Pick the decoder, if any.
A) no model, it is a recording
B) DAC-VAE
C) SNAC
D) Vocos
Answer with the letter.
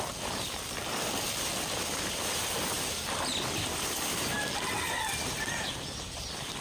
A